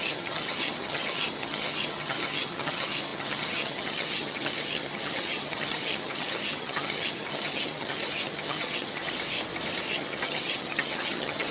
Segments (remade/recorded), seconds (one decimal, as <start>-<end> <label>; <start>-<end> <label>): 0.0-9.0 remade; 9.0-9.9 recorded; 9.9-11.5 remade